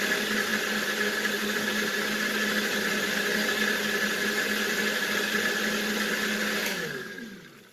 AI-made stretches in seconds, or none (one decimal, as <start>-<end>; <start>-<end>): 6.6-7.2